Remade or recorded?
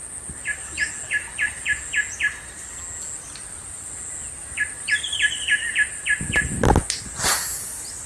recorded